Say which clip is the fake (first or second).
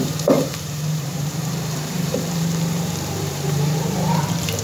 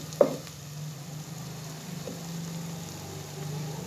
first